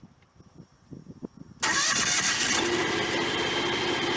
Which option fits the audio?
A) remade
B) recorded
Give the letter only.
B